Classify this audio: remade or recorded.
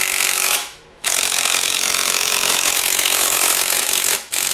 remade